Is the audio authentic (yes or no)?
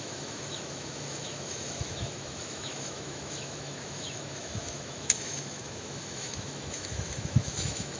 no